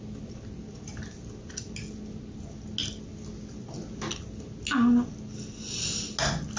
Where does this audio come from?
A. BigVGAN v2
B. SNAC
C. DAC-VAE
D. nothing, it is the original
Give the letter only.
D